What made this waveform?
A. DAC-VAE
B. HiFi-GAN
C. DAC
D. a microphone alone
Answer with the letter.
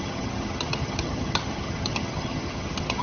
B